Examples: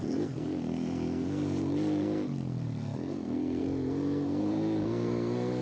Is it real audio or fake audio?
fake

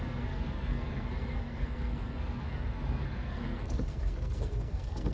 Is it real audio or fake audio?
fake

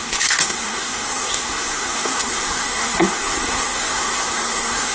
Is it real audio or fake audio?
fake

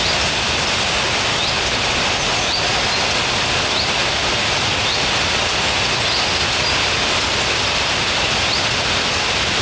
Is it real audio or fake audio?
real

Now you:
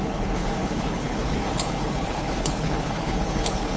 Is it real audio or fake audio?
fake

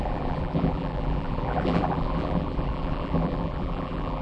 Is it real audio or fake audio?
fake